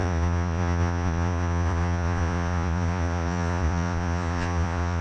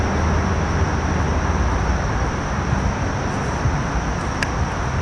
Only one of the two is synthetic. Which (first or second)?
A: first